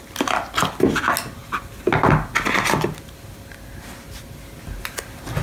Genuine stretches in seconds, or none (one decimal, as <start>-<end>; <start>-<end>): 0.0-5.4